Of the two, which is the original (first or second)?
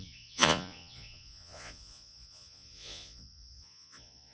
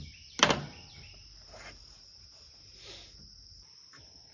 second